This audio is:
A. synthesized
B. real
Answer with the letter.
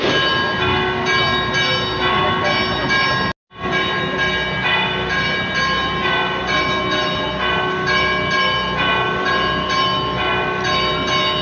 B